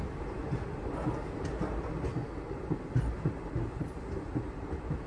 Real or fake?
real